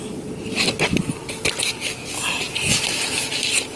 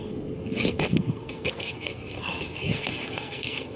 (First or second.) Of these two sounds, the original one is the first